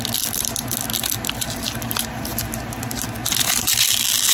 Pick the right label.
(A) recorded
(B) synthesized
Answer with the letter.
A